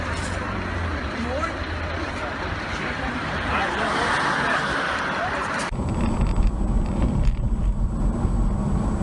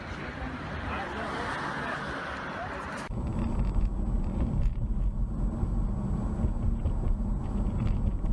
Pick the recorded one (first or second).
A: second